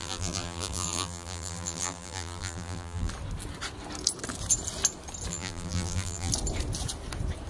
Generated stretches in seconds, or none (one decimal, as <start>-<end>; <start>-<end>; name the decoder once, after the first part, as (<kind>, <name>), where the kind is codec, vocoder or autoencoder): 0.0-3.1 (vocoder, BigVGAN v2); 5.3-6.3